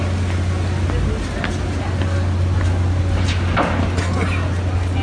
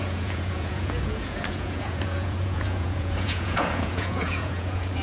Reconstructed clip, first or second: second